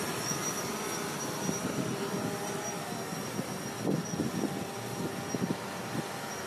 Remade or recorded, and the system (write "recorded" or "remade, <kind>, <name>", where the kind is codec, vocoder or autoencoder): recorded